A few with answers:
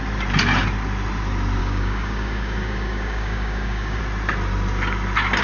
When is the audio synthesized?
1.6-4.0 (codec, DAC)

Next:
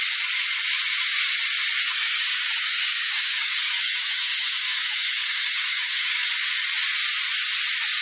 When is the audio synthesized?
1.8-6.3 (codec, DAC)

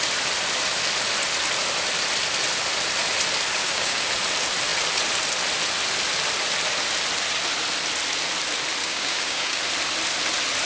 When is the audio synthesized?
3.6-4.1 (codec, DAC); 8.8-9.6

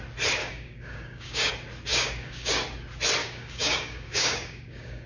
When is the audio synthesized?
0.4-1.5 (codec, DAC); 1.9-2.5; 3.2-5.1

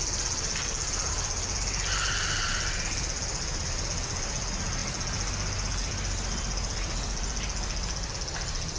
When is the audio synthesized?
none